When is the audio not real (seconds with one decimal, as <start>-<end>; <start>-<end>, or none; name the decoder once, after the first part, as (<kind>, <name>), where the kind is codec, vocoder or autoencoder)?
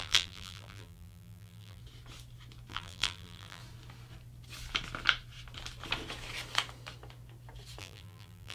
0.0-1.8 (vocoder, BigVGAN v2); 2.7-3.6; 7.8-8.5